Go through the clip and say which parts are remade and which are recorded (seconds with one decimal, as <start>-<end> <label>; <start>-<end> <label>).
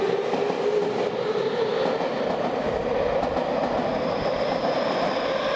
0.0-5.6 recorded